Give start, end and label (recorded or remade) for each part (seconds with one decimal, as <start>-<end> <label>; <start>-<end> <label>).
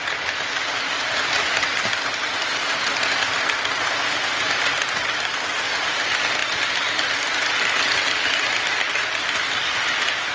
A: 0.0-10.3 recorded